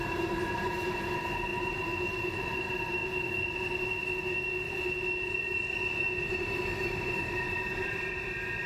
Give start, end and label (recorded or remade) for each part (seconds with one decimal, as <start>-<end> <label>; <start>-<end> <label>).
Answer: 0.0-3.0 remade; 3.0-6.3 recorded; 6.3-8.7 remade